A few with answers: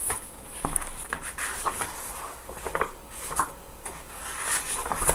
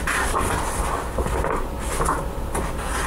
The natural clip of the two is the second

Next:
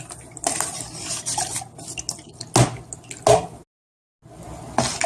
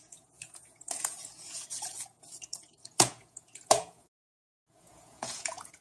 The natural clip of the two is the first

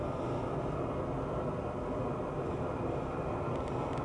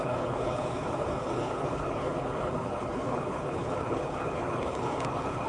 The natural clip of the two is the first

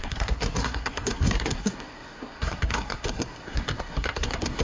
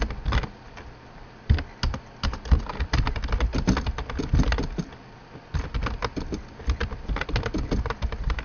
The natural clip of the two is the second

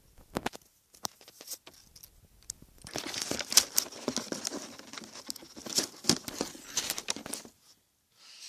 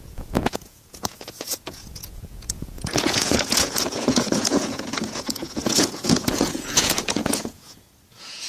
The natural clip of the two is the first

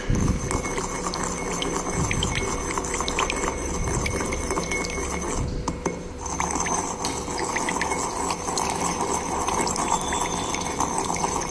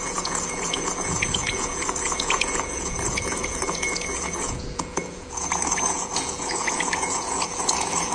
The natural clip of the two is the first